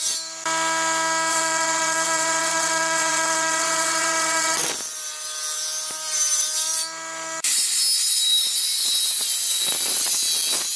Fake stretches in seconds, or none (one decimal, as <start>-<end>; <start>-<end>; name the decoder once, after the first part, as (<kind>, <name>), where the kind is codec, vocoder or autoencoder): 1.3-4.7 (vocoder, WaveNeXt)